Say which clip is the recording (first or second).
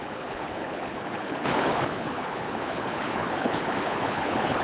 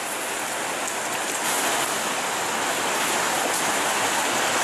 second